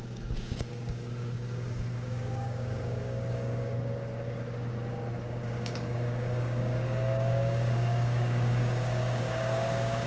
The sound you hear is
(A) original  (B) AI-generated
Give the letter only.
B